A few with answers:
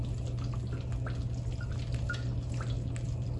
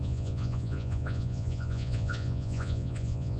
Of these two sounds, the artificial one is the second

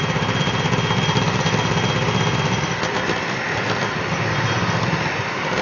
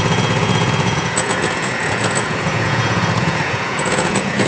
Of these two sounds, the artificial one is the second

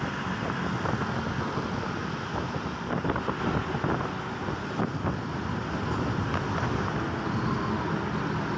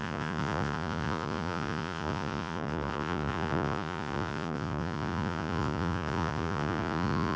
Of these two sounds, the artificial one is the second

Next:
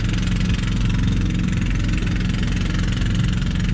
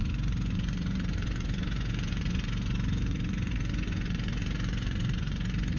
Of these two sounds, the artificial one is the second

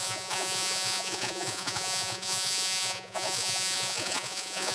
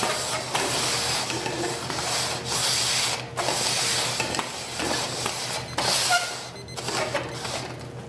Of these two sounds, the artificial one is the first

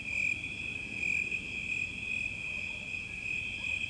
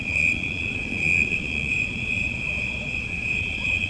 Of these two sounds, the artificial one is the second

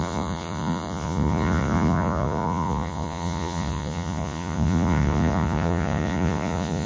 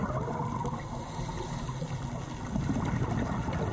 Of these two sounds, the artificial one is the first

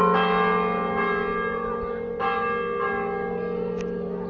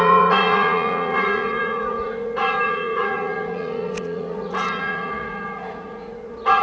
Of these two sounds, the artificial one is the second